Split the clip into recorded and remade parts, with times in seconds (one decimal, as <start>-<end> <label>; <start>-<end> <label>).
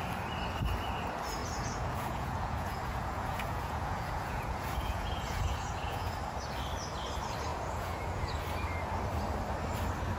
0.0-1.4 recorded; 1.4-6.1 remade; 6.1-7.5 recorded; 7.5-8.4 remade; 8.4-10.2 recorded